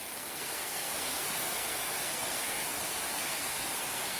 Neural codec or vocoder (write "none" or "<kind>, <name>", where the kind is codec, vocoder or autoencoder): codec, SNAC